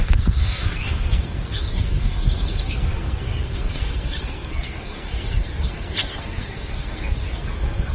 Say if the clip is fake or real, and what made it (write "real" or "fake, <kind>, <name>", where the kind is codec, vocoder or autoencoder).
fake, codec, SNAC